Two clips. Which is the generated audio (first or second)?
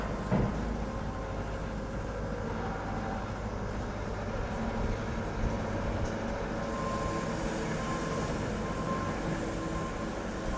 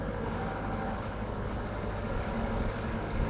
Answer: second